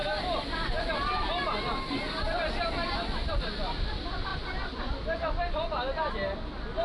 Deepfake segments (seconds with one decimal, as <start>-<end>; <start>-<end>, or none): none